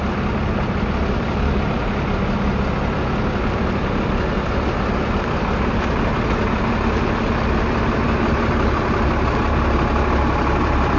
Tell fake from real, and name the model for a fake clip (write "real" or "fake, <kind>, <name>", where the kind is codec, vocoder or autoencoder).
real